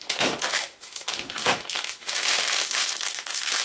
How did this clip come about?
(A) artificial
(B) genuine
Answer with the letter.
A